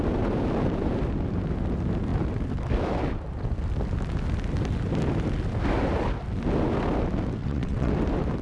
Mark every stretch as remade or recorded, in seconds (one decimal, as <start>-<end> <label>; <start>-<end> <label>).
0.0-7.4 recorded; 7.4-7.9 remade; 7.9-8.4 recorded